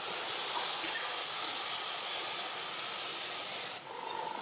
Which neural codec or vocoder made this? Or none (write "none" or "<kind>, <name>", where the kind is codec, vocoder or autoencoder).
none